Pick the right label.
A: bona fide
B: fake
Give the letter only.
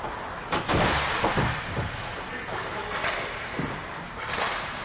B